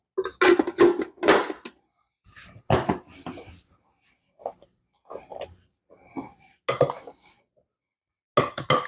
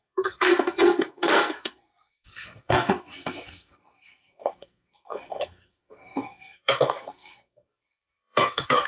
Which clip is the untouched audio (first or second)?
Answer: first